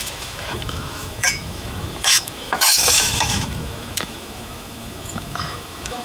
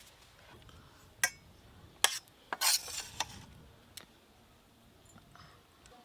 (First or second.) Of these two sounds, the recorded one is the second